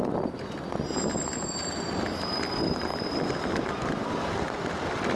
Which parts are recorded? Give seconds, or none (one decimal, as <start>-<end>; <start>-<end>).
0.0-5.2